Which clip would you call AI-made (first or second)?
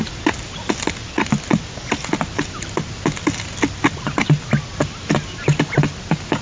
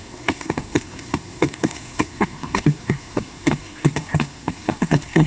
second